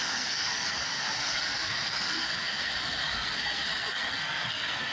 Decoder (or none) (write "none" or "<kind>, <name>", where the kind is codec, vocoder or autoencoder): codec, SNAC